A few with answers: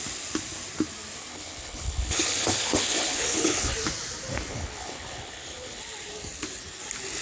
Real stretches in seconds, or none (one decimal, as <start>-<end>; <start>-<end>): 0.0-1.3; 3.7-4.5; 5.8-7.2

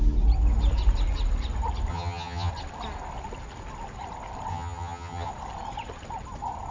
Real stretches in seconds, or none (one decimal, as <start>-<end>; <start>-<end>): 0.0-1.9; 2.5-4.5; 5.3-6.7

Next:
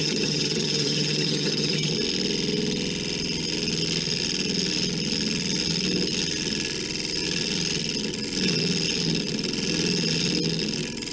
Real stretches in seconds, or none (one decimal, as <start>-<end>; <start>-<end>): 1.9-11.1